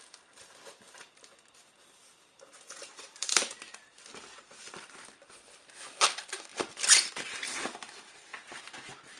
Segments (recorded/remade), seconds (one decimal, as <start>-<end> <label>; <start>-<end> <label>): 0.0-2.0 recorded; 2.0-5.1 remade; 5.1-9.2 recorded